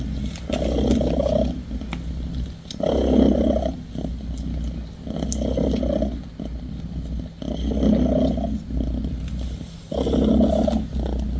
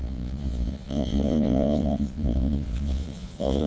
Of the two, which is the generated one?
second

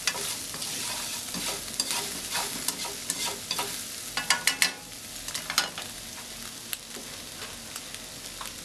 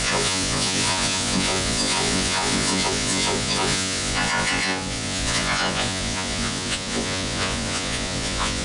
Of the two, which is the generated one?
second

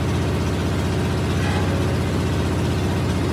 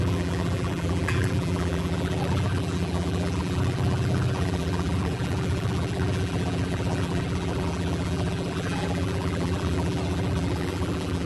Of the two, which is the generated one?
second